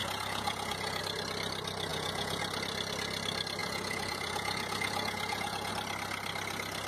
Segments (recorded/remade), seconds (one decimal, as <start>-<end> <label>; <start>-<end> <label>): 0.0-1.0 remade; 1.0-1.9 recorded; 1.9-2.4 remade; 2.4-3.6 recorded; 3.6-5.7 remade; 5.7-6.9 recorded